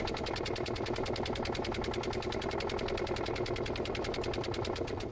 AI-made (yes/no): yes